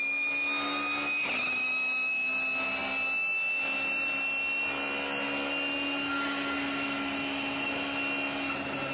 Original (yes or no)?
yes